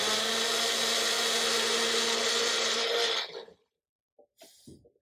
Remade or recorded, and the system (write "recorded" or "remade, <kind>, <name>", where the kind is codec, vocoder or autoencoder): recorded